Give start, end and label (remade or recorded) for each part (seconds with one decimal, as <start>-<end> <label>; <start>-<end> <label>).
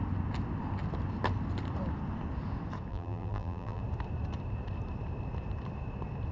0.0-2.9 recorded; 2.9-3.8 remade; 3.8-6.3 recorded